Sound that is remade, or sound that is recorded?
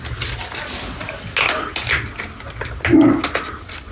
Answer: recorded